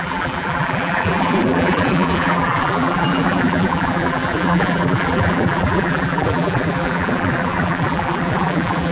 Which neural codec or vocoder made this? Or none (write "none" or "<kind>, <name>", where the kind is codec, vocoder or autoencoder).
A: vocoder, BigVGAN v2